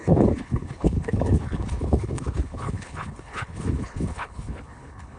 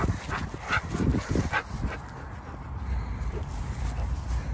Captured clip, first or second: second